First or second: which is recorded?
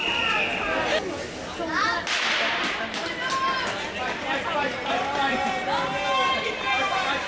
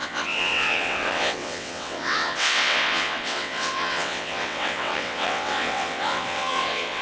first